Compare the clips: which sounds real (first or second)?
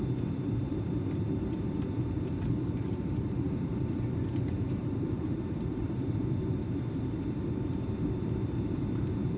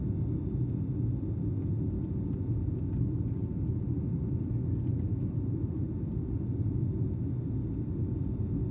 second